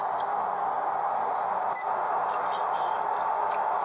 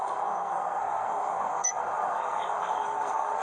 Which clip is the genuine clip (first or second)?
first